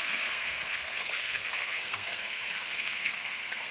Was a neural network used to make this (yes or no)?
yes